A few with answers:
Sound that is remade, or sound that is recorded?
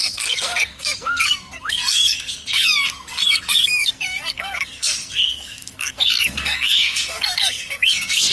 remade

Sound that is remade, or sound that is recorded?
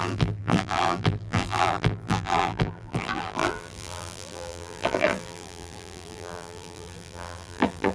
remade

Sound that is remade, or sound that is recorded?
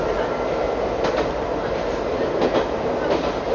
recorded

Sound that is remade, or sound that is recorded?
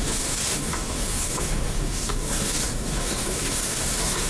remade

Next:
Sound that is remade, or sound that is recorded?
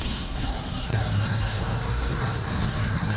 remade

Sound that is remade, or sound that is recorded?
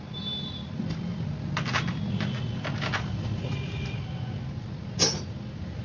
recorded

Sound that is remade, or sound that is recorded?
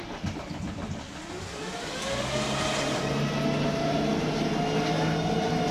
recorded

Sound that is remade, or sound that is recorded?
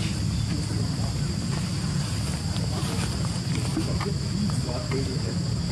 recorded